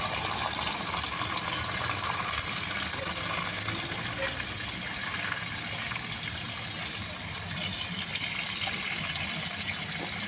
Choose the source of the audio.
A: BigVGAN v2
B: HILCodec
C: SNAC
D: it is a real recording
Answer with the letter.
D